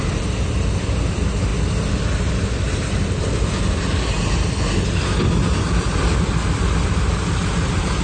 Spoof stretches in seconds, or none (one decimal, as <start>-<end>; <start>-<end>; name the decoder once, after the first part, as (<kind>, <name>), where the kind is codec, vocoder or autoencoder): none